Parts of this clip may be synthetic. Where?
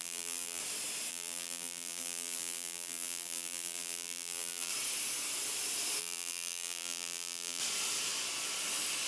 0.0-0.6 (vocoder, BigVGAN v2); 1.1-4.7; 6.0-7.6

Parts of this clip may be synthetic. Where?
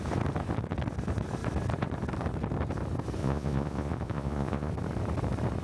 3.2-4.7 (vocoder, Vocos)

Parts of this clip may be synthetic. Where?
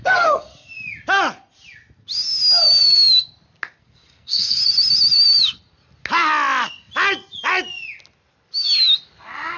0.0-0.5 (codec, SNAC); 3.8-4.6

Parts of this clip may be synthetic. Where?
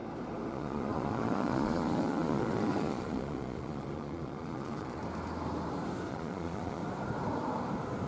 0.5-5.0 (vocoder, Vocos); 6.1-6.8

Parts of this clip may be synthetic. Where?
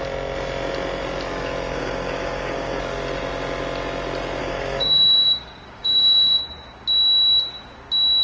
1.7-2.8 (codec, DAC); 4.4-6.4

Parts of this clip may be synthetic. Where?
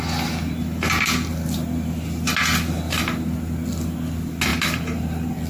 none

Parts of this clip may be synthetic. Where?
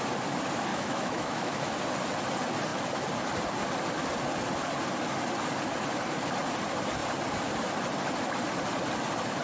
0.7-1.7 (autoencoder, DAC-VAE)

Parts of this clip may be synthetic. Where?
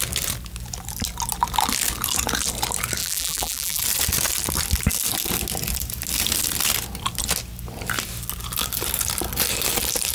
3.0-3.8 (vocoder, BigVGAN v2)